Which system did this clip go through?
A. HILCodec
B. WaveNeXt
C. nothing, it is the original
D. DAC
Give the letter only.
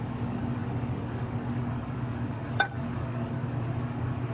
D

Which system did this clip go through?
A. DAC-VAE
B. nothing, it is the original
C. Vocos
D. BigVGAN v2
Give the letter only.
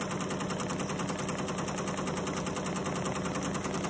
B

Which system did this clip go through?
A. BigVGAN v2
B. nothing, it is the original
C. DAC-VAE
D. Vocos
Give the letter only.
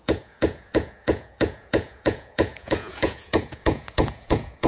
D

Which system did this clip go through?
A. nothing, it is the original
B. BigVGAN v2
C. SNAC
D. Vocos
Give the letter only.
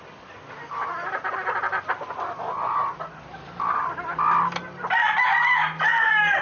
A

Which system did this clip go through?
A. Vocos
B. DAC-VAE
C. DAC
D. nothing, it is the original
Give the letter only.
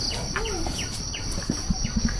D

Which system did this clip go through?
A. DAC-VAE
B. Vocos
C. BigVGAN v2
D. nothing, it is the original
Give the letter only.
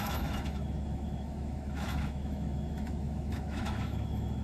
A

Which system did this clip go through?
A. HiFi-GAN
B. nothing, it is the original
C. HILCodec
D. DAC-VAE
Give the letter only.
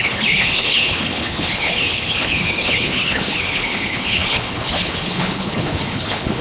C